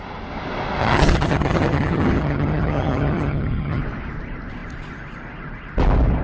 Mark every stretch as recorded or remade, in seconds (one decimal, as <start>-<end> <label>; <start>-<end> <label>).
0.0-0.8 recorded; 0.8-3.8 remade; 3.8-6.2 recorded